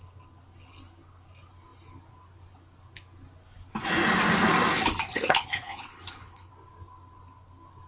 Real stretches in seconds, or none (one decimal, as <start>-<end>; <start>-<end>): 0.0-5.1; 6.5-7.9

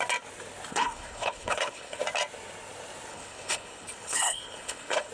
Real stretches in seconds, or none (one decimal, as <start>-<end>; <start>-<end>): 0.0-0.7; 2.0-3.1